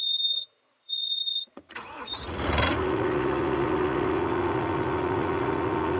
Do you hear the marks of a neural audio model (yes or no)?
yes